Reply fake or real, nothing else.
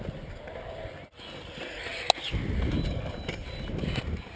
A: real